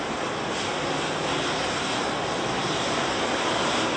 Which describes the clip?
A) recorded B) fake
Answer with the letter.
A